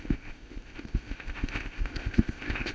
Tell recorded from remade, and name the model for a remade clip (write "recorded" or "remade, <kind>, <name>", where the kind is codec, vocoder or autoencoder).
remade, codec, ZipCodec